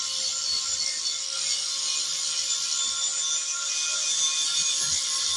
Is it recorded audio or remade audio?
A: recorded